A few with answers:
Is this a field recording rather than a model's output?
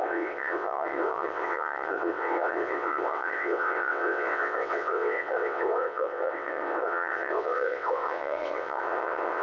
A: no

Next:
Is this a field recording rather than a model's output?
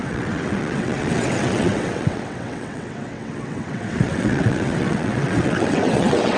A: no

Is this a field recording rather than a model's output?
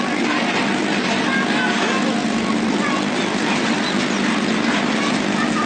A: yes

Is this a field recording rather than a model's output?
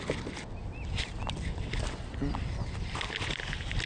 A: yes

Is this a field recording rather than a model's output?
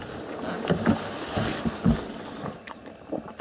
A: yes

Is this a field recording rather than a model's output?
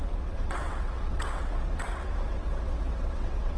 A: no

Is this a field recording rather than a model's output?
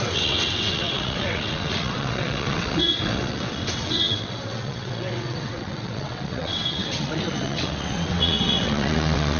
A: no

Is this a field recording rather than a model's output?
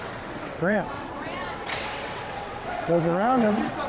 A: no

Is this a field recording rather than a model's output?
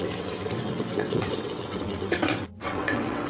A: no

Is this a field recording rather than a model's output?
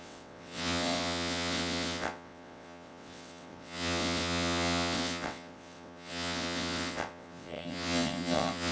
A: no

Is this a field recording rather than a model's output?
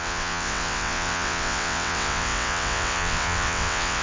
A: no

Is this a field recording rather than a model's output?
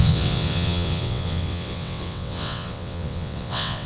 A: no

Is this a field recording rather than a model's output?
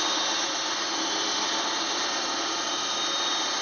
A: yes